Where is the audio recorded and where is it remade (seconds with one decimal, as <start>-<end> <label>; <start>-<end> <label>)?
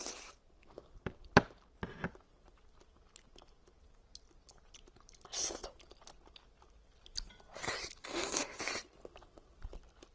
0.0-8.0 recorded; 8.0-8.6 remade; 8.6-10.1 recorded